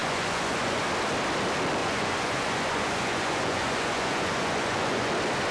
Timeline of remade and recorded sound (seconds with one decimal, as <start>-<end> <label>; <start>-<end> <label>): 0.0-0.8 remade; 0.8-1.8 recorded; 1.8-5.1 remade; 5.1-5.5 recorded